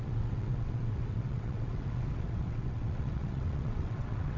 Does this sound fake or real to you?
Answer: fake